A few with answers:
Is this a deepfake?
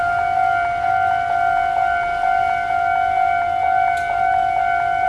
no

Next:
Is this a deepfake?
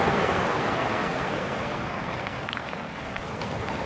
yes